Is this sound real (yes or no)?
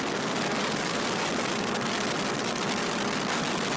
yes